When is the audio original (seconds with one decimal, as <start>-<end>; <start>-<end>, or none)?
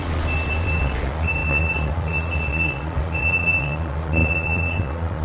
none